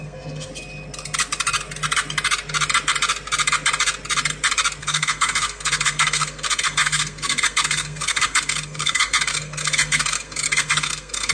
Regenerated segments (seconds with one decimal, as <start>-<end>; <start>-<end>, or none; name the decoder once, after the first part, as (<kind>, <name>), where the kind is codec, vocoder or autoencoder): 0.0-0.5 (codec, SNAC); 4.8-11.3